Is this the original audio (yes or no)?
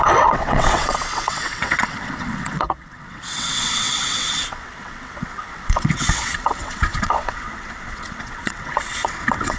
no